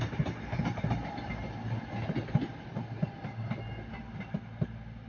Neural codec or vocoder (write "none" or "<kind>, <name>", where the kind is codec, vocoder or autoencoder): none